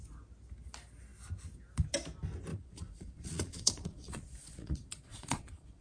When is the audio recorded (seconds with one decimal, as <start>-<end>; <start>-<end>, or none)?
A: 0.0-2.5